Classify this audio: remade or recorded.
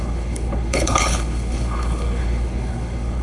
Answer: remade